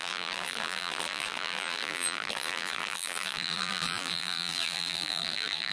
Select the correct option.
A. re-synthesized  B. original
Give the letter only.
A